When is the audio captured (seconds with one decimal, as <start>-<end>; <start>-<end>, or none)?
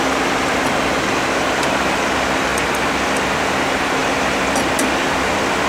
0.0-5.7